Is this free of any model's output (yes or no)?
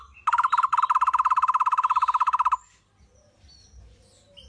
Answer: yes